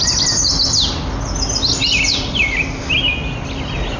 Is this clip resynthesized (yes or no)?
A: no